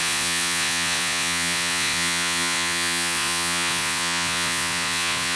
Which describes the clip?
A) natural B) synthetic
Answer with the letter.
B